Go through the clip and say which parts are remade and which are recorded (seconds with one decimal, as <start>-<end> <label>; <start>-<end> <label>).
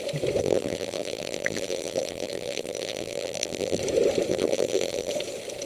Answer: 0.0-0.4 recorded; 0.4-3.8 remade; 3.8-4.3 recorded; 4.3-5.1 remade; 5.1-5.7 recorded